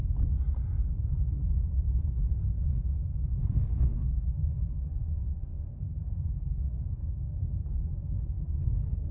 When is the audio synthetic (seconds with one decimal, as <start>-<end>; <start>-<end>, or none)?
3.3-9.1